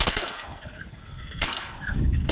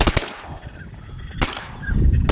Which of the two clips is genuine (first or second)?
second